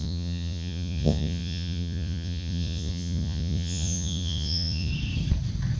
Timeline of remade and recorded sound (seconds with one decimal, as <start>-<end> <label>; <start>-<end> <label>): 0.0-4.9 remade; 4.9-5.8 recorded